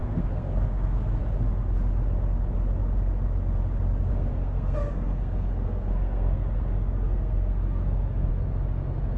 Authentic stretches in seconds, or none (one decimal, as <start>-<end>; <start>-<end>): 1.2-4.1; 8.3-9.2